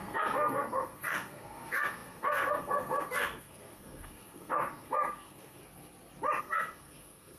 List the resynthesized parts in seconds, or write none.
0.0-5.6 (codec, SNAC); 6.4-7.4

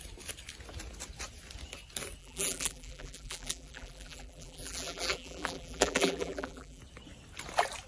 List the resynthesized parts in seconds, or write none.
2.2-6.8 (vocoder, BigVGAN v2)

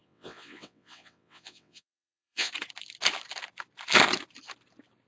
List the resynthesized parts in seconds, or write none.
0.0-2.5 (vocoder, WaveNeXt)

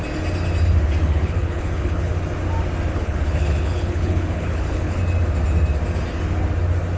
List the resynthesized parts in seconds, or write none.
1.0-2.1 (codec, HILCodec); 2.9-5.0

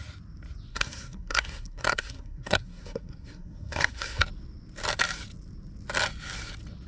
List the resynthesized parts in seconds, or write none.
0.7-4.2 (codec, SNAC)

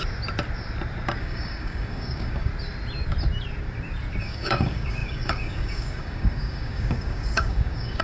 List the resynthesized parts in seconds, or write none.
1.2-2.5 (codec, DAC); 4.2-8.0

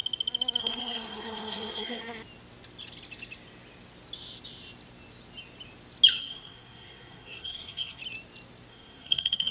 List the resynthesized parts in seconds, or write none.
0.6-2.0 (codec, SNAC); 6.2-8.0; 8.7-9.5

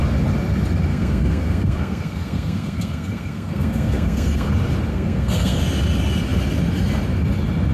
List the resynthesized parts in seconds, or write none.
0.9-4.5 (codec, SNAC); 4.9-5.6